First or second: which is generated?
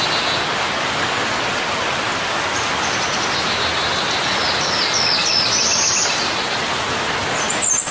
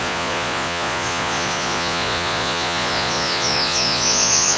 second